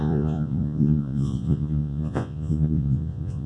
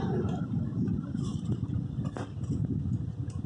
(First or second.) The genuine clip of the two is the second